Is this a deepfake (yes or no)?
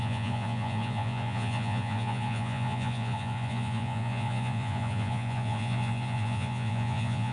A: yes